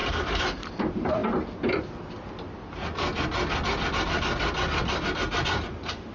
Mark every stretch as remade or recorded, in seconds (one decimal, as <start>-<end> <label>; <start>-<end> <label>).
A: 0.0-6.1 recorded